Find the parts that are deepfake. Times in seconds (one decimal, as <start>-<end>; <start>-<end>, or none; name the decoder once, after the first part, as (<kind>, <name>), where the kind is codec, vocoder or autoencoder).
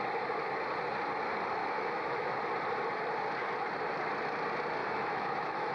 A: 1.6-2.4 (autoencoder, DAC-VAE); 4.8-5.7